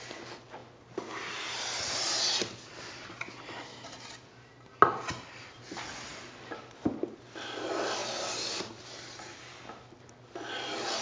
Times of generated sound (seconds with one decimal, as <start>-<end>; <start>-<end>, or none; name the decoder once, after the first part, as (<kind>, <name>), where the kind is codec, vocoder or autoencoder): none